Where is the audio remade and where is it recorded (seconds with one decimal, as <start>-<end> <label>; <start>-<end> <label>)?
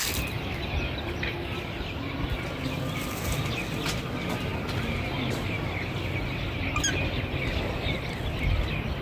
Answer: 0.0-9.0 recorded